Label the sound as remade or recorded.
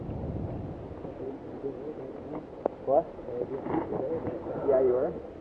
remade